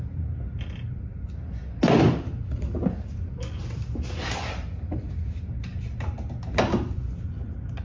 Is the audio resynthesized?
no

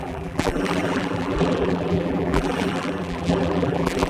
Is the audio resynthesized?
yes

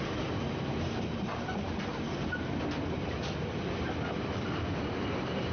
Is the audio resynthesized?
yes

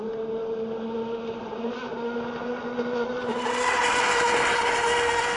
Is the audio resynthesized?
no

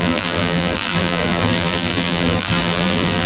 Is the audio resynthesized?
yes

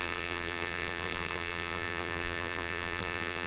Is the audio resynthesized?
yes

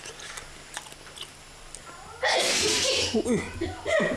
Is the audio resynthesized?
no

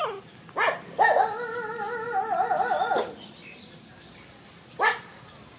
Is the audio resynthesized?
no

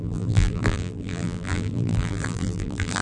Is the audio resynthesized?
yes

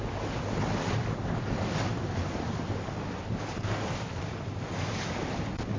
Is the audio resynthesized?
no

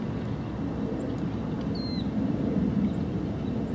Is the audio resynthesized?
no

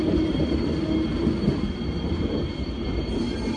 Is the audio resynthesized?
yes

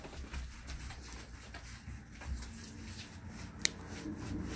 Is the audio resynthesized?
no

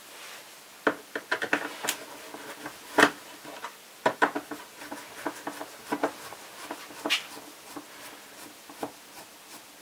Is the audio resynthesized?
no